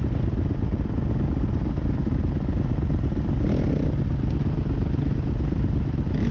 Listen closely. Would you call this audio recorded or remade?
recorded